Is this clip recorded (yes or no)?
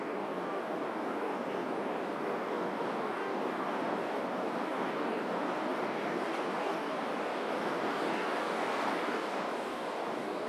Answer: no